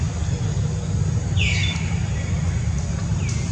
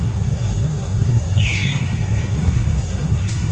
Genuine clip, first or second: first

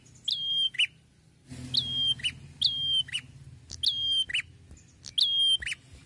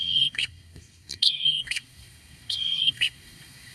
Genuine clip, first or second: first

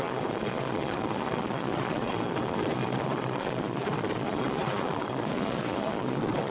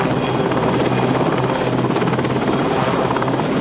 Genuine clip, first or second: second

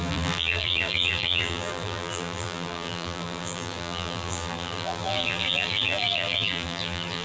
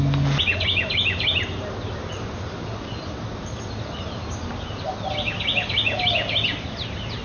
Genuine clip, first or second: second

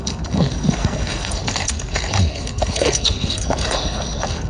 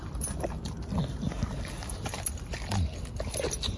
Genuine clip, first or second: second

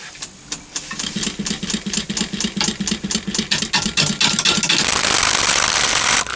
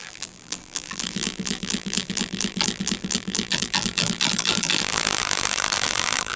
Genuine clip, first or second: first